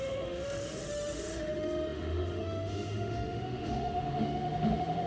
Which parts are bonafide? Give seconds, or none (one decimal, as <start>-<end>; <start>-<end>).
none